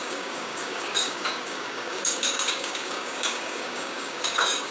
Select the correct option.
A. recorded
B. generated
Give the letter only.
B